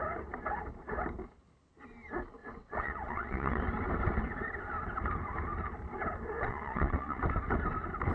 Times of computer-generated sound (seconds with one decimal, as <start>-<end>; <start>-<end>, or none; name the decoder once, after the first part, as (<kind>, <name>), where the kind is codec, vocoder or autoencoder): 2.4-3.6 (vocoder, WaveNeXt); 6.5-7.2